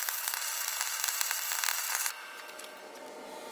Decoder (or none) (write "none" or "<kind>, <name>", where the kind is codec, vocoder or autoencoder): none